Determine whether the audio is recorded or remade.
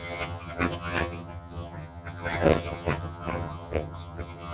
remade